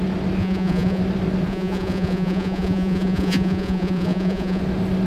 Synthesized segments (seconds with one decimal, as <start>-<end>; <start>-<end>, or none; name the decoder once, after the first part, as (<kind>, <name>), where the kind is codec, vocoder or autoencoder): 0.4-1.0 (vocoder, Vocos); 1.5-4.6